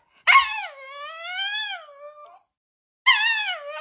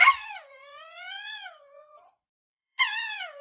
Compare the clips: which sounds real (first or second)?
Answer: first